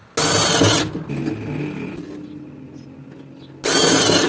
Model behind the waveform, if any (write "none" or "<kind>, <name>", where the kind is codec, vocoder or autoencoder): none